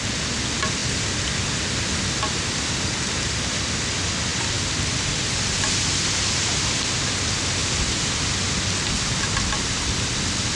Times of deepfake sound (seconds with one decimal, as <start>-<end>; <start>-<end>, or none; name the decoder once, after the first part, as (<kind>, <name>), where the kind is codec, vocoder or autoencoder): none